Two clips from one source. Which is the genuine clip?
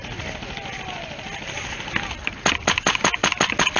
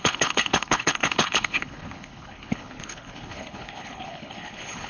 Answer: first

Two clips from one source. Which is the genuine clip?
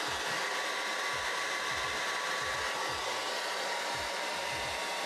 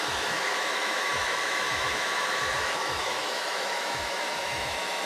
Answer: first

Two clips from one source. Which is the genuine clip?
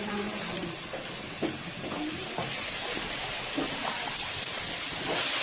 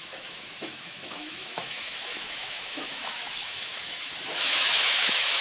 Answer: first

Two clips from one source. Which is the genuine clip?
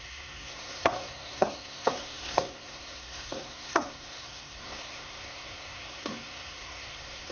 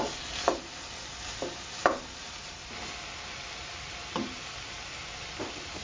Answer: second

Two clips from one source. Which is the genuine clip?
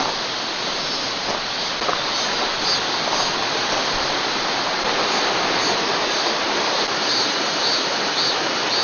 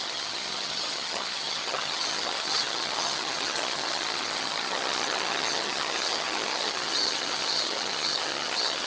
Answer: first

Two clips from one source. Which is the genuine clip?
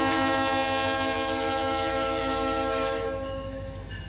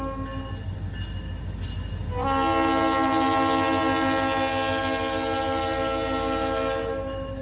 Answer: second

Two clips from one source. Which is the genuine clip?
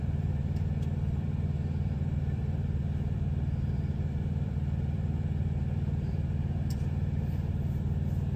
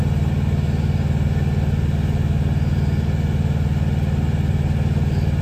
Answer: second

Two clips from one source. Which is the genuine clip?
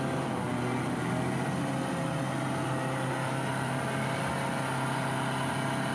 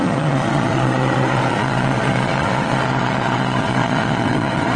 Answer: first